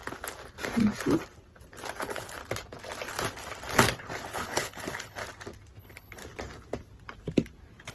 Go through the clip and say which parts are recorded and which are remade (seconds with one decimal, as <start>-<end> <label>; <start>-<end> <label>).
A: 0.0-2.0 recorded; 2.0-2.4 remade; 2.4-4.3 recorded; 4.3-5.2 remade; 5.2-5.8 recorded; 5.8-6.2 remade; 6.2-7.9 recorded